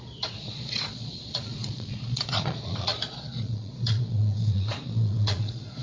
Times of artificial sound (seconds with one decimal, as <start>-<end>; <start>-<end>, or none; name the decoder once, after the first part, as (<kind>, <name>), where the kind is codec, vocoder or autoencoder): 0.0-5.8 (vocoder, Vocos)